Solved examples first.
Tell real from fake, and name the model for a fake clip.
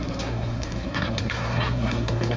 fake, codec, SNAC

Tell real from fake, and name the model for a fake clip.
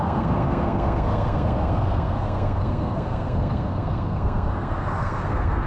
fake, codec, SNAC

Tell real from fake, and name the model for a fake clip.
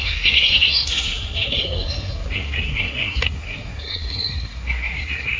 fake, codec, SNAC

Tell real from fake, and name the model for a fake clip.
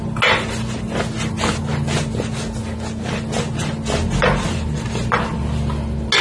real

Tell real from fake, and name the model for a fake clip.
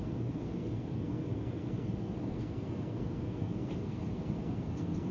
fake, codec, SNAC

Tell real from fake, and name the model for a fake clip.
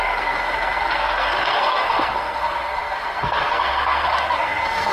fake, codec, SNAC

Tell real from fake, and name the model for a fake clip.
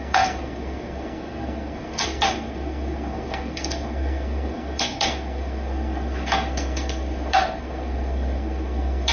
fake, codec, SNAC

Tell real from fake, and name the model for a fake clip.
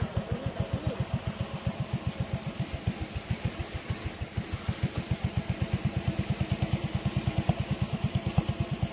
real